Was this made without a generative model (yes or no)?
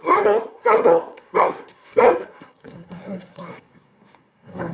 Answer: no